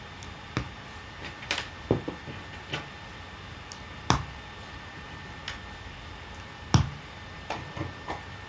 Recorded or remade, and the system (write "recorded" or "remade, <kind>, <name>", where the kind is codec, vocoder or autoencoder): remade, vocoder, BigVGAN v2